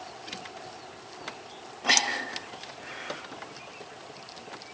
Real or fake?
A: real